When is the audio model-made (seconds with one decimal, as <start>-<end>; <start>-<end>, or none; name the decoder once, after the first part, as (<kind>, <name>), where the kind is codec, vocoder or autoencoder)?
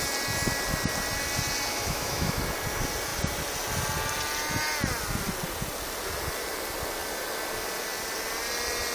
1.7-2.4 (autoencoder, DAC-VAE)